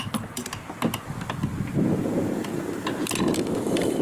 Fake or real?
real